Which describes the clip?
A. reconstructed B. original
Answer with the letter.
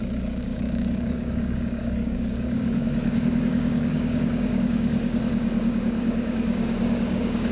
A